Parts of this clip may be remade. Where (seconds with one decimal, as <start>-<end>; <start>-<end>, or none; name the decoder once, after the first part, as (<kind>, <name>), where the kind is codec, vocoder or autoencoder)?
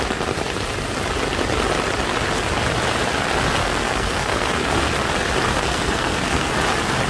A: 3.6-4.7 (codec, SNAC); 5.6-6.5